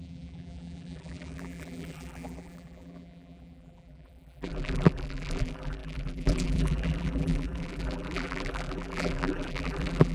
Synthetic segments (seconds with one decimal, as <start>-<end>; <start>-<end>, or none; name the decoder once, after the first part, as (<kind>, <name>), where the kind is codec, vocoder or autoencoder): 0.0-10.1 (vocoder, BigVGAN v2)